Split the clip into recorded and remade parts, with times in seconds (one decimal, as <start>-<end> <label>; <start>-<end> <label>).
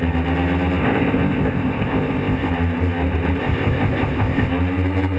0.0-0.8 recorded; 0.8-2.5 remade; 2.5-3.4 recorded; 3.4-4.5 remade; 4.5-5.2 recorded